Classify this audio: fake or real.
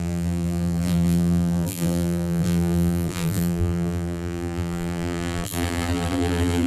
fake